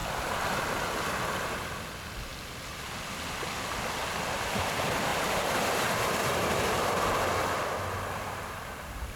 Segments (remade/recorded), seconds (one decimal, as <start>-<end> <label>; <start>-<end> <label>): 0.0-0.6 remade; 0.6-5.1 recorded; 5.1-6.3 remade; 6.3-9.2 recorded